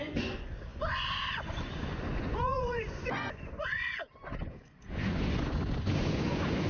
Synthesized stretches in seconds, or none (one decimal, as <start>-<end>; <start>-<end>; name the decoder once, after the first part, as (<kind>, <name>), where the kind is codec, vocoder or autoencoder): 0.0-6.7 (vocoder, Vocos)